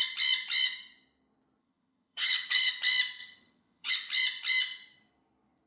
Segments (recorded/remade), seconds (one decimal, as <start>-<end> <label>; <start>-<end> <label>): 0.0-1.6 recorded; 1.6-2.7 remade; 2.7-3.2 recorded; 3.2-3.9 remade; 3.9-5.7 recorded